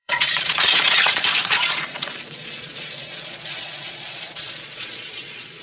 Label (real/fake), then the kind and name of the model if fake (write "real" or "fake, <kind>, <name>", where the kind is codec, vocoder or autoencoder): fake, vocoder, Vocos